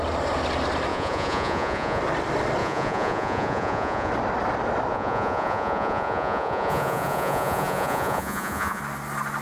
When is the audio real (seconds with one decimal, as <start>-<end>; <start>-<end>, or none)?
0.0-0.9; 2.0-2.6; 4.1-4.9; 8.8-9.4